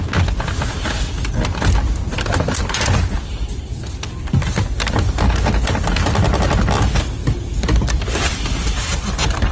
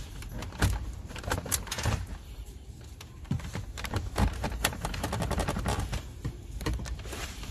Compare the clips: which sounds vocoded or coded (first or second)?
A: second